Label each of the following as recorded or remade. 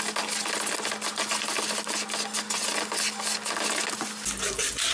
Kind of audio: recorded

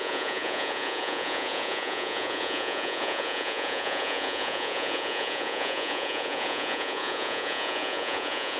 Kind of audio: remade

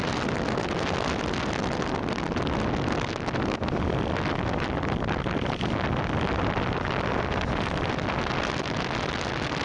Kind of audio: recorded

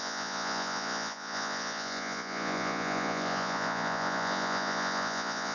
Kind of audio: remade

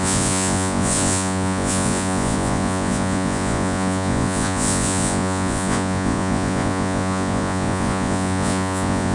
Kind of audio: remade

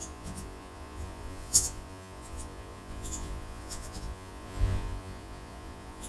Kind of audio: remade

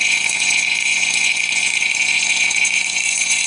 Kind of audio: remade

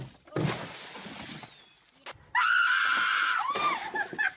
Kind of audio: recorded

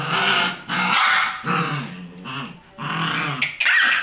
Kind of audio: recorded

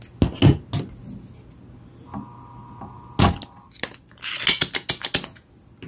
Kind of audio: recorded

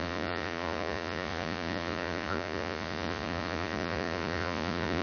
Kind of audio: remade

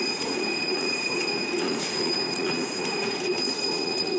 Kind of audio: remade